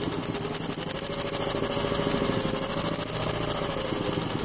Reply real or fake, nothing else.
real